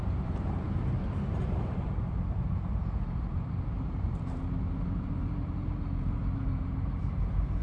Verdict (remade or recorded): remade